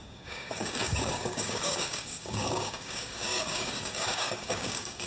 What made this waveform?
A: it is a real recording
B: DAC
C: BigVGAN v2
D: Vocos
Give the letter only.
B